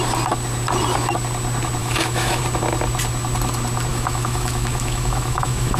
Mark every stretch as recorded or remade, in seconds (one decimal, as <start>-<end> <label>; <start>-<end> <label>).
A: 0.0-1.8 recorded; 1.8-2.4 remade; 2.4-3.9 recorded; 3.9-5.8 remade